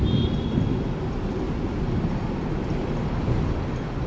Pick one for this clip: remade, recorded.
recorded